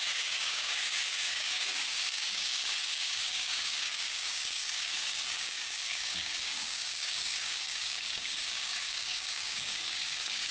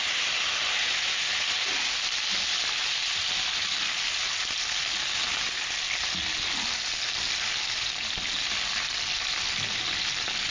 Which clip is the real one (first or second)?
second